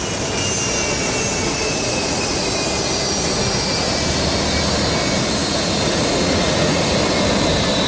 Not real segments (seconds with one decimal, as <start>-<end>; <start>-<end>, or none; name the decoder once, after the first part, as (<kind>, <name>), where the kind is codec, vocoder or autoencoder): 1.4-2.5 (vocoder, Vocos); 5.4-6.9